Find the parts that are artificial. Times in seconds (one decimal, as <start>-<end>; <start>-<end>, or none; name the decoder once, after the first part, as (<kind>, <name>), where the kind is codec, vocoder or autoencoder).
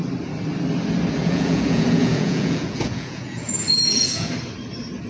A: 1.2-4.3 (vocoder, Vocos)